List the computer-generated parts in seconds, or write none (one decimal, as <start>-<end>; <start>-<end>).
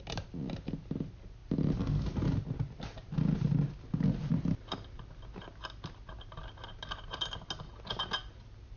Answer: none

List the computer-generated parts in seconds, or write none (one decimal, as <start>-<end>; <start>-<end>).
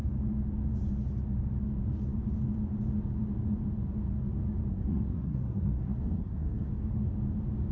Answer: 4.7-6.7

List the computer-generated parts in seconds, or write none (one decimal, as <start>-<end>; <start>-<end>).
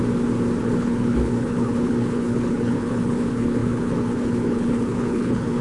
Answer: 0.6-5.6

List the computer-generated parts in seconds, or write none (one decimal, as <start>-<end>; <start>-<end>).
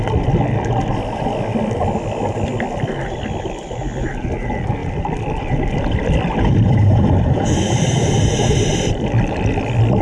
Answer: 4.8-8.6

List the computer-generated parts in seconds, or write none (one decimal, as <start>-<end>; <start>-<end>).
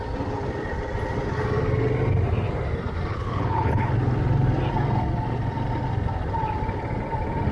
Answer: 3.1-3.9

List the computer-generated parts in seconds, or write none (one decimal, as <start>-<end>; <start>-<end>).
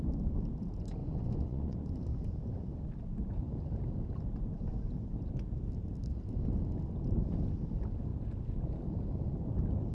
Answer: 1.0-2.1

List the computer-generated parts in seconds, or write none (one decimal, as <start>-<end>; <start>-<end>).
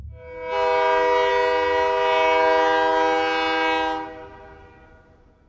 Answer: none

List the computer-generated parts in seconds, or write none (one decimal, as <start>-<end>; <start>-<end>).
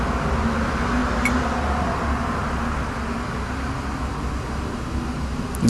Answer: none